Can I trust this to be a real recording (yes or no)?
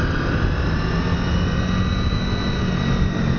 yes